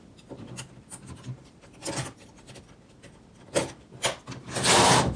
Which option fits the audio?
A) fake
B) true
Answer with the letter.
B